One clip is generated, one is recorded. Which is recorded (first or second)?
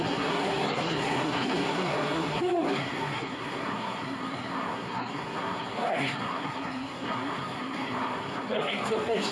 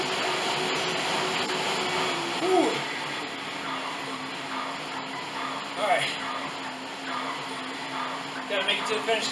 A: second